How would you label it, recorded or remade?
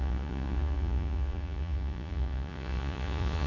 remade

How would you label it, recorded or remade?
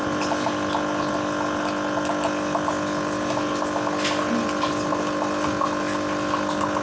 recorded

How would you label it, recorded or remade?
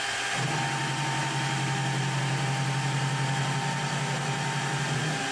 recorded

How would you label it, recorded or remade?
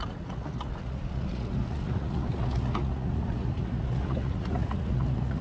remade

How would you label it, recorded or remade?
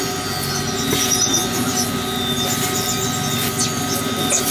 recorded